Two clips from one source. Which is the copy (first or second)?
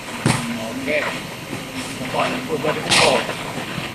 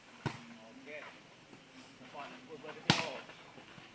first